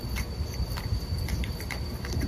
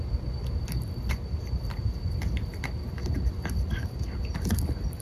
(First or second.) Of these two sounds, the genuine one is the second